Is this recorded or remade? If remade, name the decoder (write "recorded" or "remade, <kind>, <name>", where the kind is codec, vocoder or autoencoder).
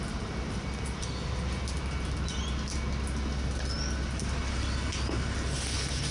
recorded